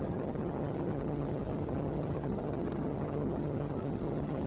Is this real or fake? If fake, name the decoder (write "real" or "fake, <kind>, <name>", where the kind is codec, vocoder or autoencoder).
fake, vocoder, HiFi-GAN